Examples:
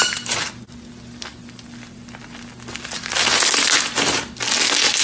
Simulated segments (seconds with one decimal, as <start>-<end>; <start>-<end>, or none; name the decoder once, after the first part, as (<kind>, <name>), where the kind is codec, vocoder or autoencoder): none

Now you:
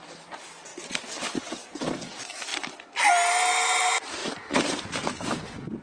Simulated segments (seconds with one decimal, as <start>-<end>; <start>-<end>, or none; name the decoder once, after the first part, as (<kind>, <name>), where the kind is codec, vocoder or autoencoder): 0.7-1.3 (vocoder, BigVGAN v2); 4.2-4.8

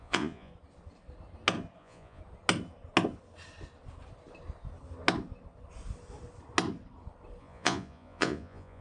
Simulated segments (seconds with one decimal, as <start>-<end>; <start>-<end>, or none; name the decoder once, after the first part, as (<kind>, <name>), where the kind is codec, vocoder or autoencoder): 0.0-0.5 (vocoder, Vocos); 1.8-2.2; 7.4-8.8

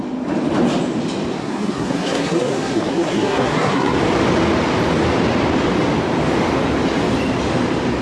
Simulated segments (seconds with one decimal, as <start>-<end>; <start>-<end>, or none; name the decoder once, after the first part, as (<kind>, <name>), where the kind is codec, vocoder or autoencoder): 1.4-4.0 (codec, SNAC)

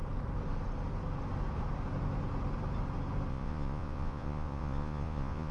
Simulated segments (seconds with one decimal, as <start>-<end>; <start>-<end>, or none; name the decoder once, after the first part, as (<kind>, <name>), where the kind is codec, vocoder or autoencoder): 3.3-5.5 (vocoder, Vocos)

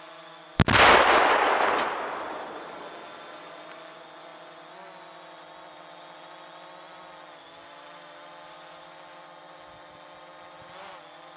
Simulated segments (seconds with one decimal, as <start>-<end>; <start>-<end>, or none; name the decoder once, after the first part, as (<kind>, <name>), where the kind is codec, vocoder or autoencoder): none

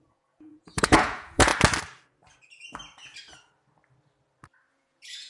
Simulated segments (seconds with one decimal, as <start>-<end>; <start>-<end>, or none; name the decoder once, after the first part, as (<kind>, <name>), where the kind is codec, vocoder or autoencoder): 0.0-1.5 (vocoder, Vocos); 4.7-5.3